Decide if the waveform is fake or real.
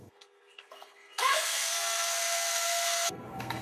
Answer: fake